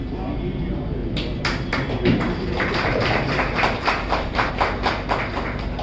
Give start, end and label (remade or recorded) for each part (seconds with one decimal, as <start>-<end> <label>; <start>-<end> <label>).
0.0-1.0 recorded; 1.0-4.5 remade; 4.5-5.8 recorded